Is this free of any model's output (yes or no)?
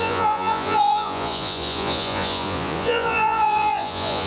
no